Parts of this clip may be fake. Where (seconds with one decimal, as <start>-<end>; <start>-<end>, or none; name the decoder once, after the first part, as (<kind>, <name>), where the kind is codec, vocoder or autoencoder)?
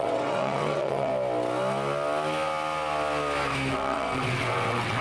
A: 0.0-1.1 (vocoder, WaveNeXt); 3.7-5.0